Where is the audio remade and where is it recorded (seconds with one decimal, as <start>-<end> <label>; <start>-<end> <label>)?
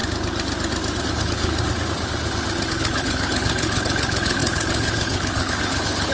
0.0-1.0 recorded; 1.0-1.5 remade; 1.5-2.7 recorded; 2.7-6.1 remade